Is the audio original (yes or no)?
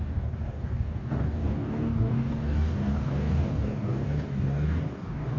no